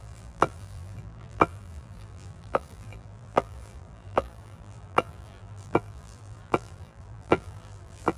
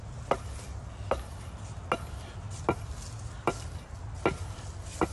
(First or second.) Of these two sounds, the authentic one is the second